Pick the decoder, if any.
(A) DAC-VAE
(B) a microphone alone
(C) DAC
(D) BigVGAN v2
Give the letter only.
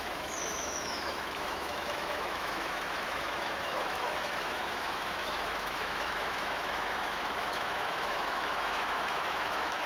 A